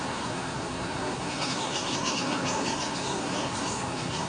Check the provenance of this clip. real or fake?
fake